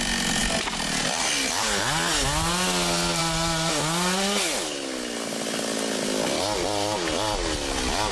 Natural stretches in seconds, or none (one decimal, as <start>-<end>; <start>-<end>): 0.0-8.1